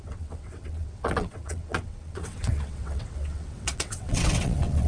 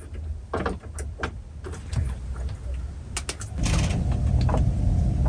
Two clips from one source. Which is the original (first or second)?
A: second